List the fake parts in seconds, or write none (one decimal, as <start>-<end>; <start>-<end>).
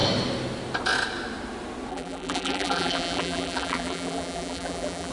1.9-5.1